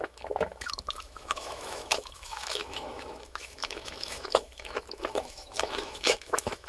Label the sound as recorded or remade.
remade